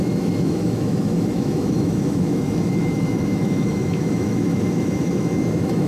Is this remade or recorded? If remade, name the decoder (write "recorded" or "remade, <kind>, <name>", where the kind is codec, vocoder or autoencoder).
remade, autoencoder, DAC-VAE